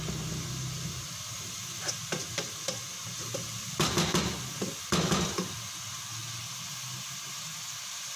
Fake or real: real